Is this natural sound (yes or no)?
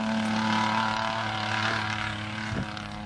yes